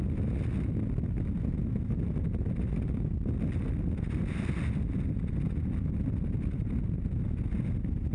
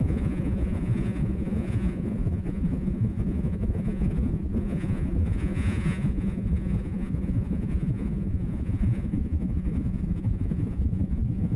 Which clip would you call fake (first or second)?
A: second